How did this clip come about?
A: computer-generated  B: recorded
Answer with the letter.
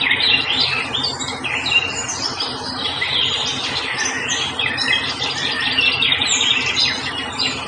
A